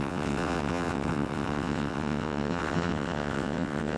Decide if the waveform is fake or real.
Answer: fake